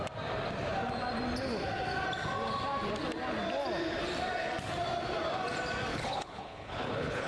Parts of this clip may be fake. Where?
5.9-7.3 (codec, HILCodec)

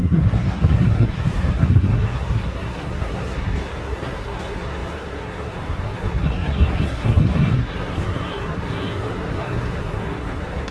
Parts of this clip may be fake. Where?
0.0-10.7 (codec, SNAC)

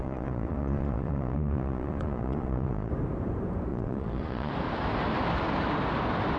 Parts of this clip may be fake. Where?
0.0-2.9 (vocoder, Vocos); 3.7-4.5

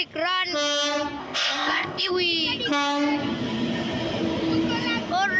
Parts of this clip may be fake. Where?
1.2-2.1 (codec, ZipCodec)

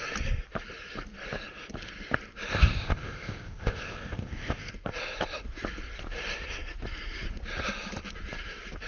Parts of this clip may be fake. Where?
2.5-4.7 (codec, ZipCodec)